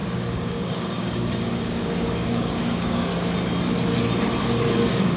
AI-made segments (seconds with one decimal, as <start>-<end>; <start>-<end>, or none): 0.0-3.1; 4.4-5.2